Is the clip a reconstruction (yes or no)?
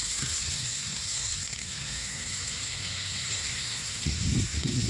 yes